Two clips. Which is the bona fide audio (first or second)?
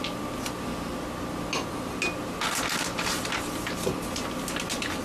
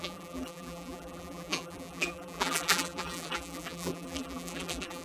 first